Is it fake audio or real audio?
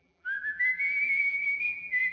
fake